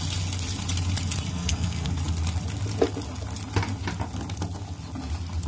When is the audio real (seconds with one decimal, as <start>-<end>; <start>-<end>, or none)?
0.0-1.3; 1.9-5.5